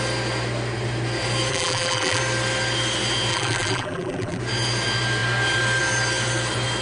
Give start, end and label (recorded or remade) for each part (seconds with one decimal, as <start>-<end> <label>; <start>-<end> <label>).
0.0-1.5 recorded; 1.5-2.2 remade; 2.2-3.3 recorded; 3.3-4.4 remade; 4.4-6.8 recorded